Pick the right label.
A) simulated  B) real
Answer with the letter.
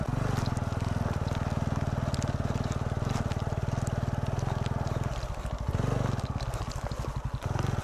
B